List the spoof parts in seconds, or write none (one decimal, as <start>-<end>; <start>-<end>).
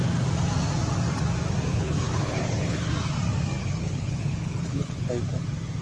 1.7-2.9; 3.6-5.1